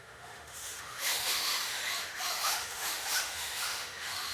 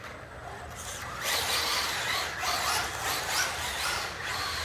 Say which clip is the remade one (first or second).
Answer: first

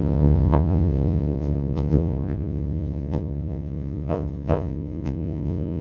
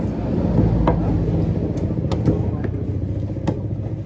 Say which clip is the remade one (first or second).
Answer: first